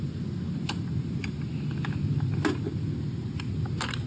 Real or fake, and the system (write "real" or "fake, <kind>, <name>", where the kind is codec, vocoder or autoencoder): real